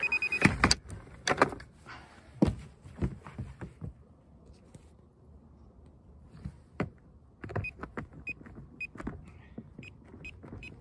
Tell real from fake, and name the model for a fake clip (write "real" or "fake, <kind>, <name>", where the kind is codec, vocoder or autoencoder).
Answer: real